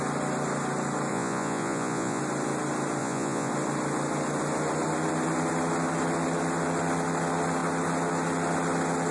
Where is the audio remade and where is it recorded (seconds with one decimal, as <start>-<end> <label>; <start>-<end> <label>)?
0.0-1.1 recorded; 1.1-2.2 remade; 2.2-3.0 recorded; 3.0-3.5 remade; 3.5-9.1 recorded